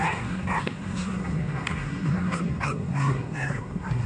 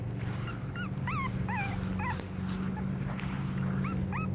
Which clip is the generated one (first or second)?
first